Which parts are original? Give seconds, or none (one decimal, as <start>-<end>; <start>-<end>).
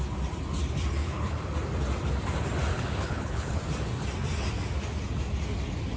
0.0-1.0; 1.5-2.7; 3.6-6.0